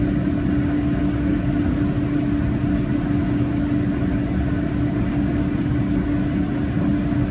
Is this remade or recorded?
recorded